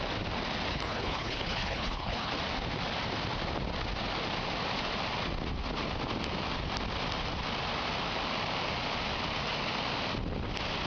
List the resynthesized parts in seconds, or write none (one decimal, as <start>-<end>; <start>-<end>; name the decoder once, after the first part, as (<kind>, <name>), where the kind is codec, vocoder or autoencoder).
0.7-2.3 (codec, HILCodec)